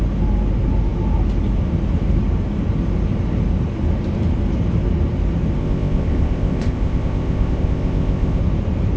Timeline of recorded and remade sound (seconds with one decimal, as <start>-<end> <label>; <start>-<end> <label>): 0.0-5.6 recorded; 5.6-8.4 remade; 8.4-9.0 recorded